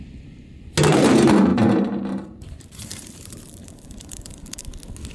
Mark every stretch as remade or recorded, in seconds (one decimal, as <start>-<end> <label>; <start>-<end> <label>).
0.0-1.5 recorded; 1.5-4.6 remade; 4.6-5.1 recorded